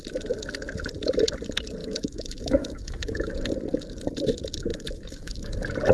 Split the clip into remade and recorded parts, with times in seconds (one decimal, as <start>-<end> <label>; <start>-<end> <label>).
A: 0.0-1.8 recorded; 1.8-3.3 remade; 3.3-4.7 recorded; 4.7-5.5 remade; 5.5-5.9 recorded